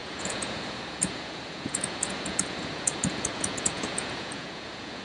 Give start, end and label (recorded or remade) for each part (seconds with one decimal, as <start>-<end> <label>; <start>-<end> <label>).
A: 0.0-5.0 remade